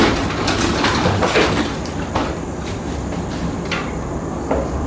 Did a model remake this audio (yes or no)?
no